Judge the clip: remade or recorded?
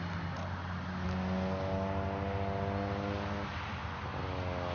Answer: recorded